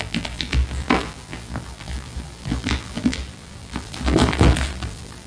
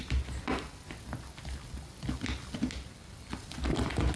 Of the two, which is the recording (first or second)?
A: second